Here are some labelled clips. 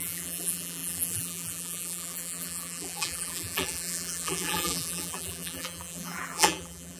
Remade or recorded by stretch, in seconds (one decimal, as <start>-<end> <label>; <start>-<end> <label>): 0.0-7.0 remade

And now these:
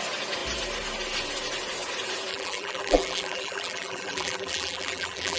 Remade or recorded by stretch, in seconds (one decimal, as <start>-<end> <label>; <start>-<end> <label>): 0.0-2.3 recorded; 2.3-5.4 remade

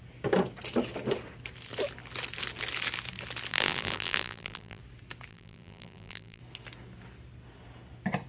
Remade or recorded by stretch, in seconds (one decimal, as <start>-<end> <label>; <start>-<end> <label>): 0.0-3.5 recorded; 3.5-4.8 remade; 4.8-5.3 recorded; 5.3-6.4 remade; 6.4-8.3 recorded

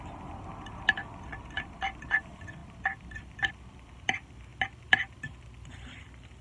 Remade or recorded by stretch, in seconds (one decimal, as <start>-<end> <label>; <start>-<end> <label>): 0.0-1.0 recorded; 1.0-1.9 remade; 1.9-2.6 recorded; 2.6-3.5 remade; 3.5-6.4 recorded

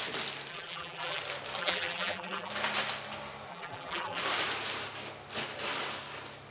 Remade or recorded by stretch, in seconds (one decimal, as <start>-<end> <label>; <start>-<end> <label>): 0.0-0.5 recorded; 0.5-1.2 remade; 1.2-1.6 recorded; 1.6-2.5 remade; 2.5-3.5 recorded; 3.5-4.2 remade; 4.2-6.5 recorded